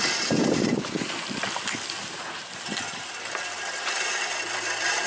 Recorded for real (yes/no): yes